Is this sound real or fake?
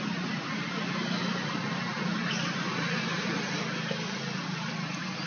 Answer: real